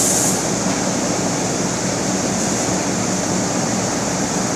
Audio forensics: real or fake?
real